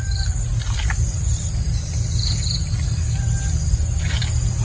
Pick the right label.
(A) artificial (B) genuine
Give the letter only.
B